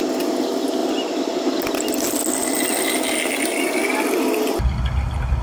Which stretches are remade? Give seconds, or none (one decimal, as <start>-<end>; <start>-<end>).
none